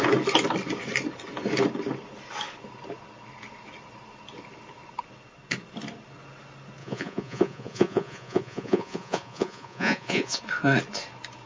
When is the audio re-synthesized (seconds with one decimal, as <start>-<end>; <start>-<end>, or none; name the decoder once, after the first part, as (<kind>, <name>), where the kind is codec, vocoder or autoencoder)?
6.8-10.4 (vocoder, Vocos)